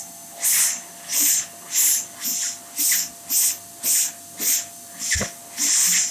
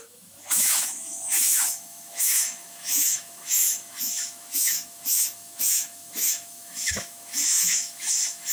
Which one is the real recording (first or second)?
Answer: first